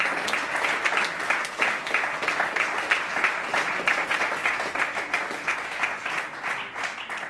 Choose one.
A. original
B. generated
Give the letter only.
A